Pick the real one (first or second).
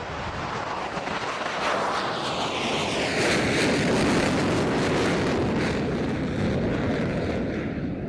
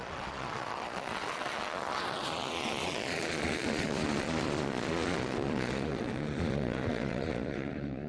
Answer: first